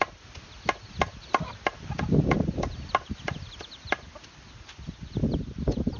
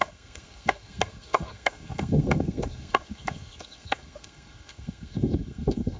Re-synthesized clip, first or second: second